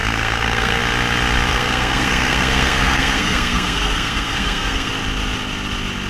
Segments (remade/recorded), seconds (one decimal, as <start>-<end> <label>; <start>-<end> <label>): 0.0-0.8 remade; 0.8-1.5 recorded; 1.5-4.9 remade; 4.9-6.1 recorded